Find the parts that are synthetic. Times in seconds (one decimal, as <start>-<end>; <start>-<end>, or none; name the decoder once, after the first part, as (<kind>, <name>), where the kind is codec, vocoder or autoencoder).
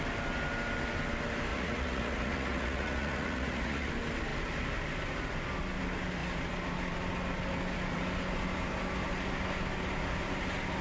1.5-3.9 (vocoder, Vocos)